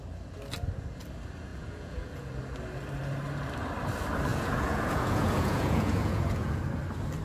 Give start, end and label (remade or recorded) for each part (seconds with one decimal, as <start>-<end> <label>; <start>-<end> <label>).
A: 0.0-1.5 recorded; 1.5-2.3 remade; 2.3-4.3 recorded; 4.3-6.6 remade; 6.6-7.2 recorded